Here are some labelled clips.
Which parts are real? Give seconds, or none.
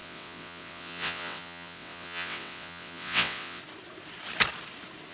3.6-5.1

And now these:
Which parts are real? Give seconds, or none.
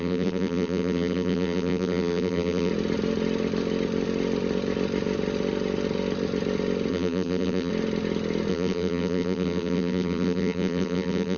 2.7-6.9; 7.7-8.5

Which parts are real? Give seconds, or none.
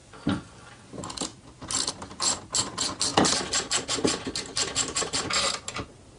0.7-6.2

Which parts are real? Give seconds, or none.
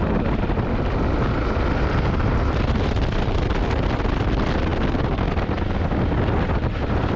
0.0-7.2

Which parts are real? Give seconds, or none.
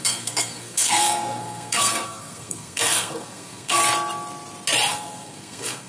3.8-4.9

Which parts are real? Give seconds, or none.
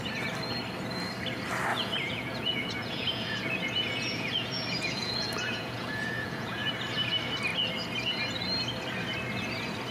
0.0-1.7; 6.7-9.9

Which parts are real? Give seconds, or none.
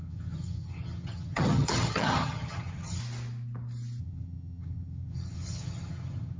3.0-4.0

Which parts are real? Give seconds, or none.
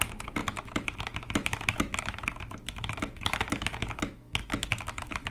none